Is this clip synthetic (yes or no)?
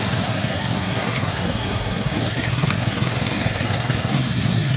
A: yes